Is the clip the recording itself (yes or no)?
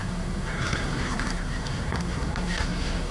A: no